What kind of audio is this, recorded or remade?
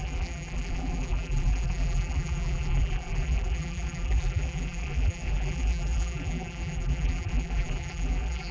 remade